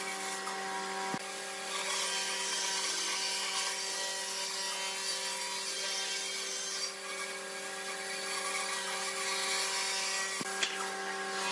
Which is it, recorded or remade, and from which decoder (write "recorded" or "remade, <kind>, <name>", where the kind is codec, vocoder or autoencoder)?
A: recorded